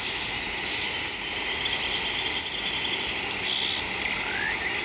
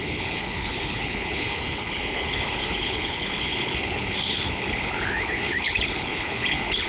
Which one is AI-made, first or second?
second